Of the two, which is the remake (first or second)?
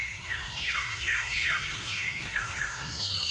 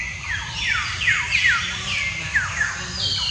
first